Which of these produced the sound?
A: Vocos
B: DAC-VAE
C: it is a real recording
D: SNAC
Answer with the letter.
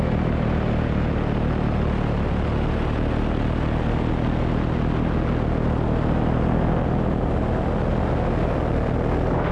C